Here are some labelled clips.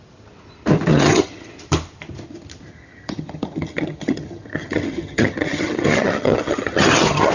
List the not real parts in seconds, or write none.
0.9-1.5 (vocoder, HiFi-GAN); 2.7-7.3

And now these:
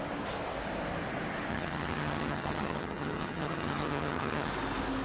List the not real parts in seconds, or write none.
1.5-4.5 (vocoder, HiFi-GAN)

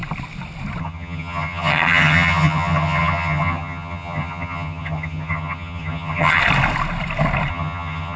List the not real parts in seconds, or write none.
0.8-6.4 (vocoder, HiFi-GAN); 7.5-8.2

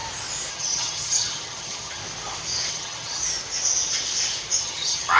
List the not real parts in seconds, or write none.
0.5-2.0 (vocoder, HiFi-GAN); 2.7-3.2; 4.6-5.2

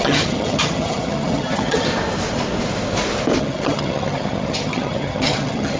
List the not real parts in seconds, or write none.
0.0-1.9 (vocoder, HiFi-GAN); 3.4-5.8